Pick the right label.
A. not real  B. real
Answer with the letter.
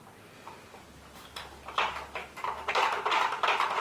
B